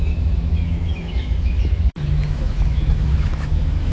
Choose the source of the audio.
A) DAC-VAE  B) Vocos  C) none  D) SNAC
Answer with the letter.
A